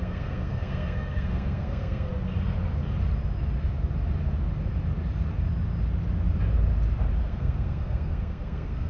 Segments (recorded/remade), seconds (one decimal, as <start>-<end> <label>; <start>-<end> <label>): 0.0-2.1 remade; 2.1-7.2 recorded; 7.2-8.9 remade